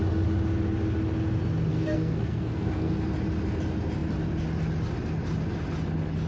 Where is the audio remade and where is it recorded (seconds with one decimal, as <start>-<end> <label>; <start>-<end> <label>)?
0.0-1.7 recorded; 1.7-2.9 remade; 2.9-6.3 recorded